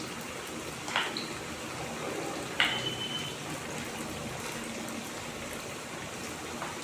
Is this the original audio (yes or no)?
yes